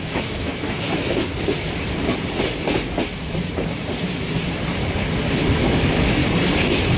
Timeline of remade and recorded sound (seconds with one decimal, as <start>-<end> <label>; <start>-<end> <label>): 0.0-1.3 remade; 1.3-5.5 recorded; 5.5-6.2 remade; 6.2-7.0 recorded